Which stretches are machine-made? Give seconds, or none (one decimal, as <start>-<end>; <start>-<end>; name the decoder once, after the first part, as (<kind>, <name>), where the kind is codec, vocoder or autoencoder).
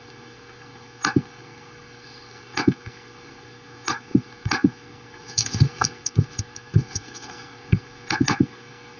0.0-9.0 (codec, SNAC)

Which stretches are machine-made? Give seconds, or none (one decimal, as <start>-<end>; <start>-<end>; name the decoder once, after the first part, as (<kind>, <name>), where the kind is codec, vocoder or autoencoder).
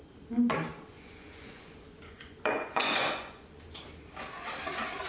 0.9-3.8 (vocoder, Vocos)